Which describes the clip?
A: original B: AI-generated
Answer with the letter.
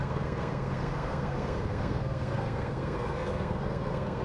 B